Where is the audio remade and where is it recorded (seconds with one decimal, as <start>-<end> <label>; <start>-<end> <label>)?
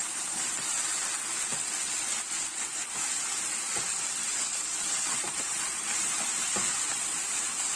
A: 0.0-0.5 remade; 0.5-4.5 recorded; 4.5-6.5 remade; 6.5-7.8 recorded